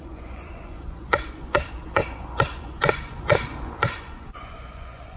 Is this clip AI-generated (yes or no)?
yes